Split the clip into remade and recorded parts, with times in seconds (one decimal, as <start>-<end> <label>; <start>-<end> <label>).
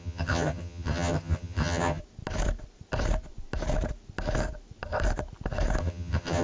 0.0-2.0 remade; 2.0-5.8 recorded; 5.8-6.4 remade